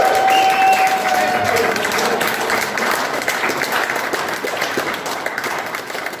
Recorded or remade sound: recorded